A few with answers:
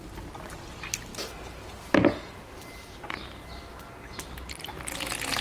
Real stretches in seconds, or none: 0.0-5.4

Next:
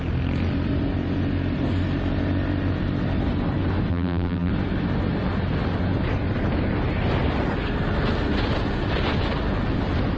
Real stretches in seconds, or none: 0.0-3.9; 4.5-10.2

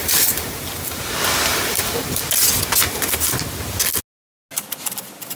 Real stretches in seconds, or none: 1.0-1.5; 2.2-5.4

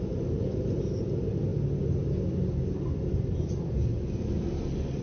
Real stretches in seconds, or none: 0.0-1.5; 4.5-5.0

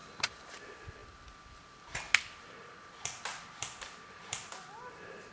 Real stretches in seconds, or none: 0.6-5.3

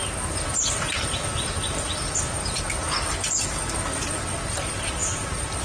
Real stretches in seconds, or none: 0.0-5.6

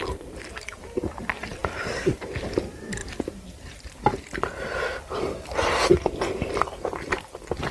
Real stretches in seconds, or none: 3.0-4.4

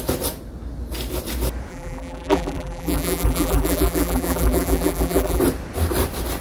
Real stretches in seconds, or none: 0.0-1.7; 5.4-6.4